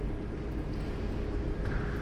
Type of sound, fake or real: real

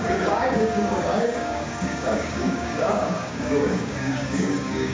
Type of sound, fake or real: fake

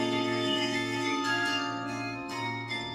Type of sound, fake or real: fake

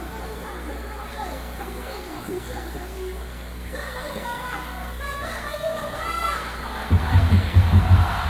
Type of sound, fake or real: fake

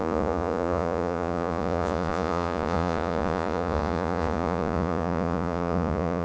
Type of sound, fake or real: fake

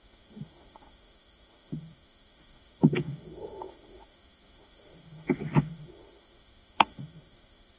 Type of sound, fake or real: fake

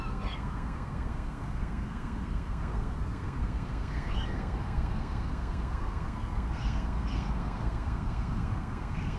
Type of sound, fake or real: fake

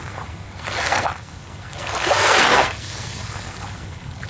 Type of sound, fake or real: fake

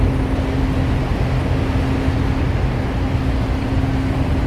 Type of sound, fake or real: real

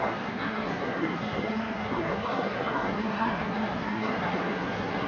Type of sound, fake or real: fake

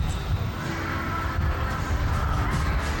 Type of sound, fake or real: real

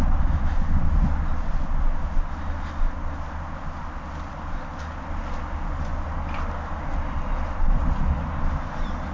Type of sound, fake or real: real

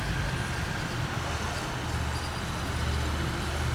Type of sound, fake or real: real